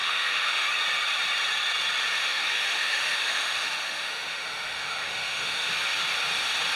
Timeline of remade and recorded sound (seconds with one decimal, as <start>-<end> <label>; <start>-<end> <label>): 0.0-0.7 remade; 0.7-2.2 recorded; 2.2-5.7 remade; 5.7-6.8 recorded